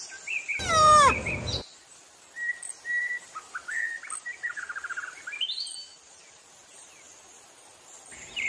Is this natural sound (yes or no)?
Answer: yes